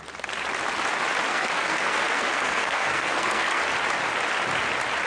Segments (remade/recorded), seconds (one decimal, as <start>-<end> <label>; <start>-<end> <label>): 0.0-1.3 recorded; 1.3-3.6 remade; 3.6-5.1 recorded